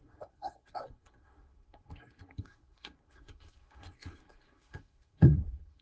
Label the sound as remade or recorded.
remade